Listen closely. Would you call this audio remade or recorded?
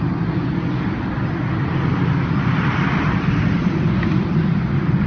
recorded